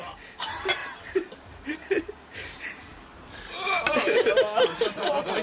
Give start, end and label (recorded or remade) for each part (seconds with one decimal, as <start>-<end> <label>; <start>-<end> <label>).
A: 0.0-0.8 recorded; 0.8-2.0 remade; 2.0-5.4 recorded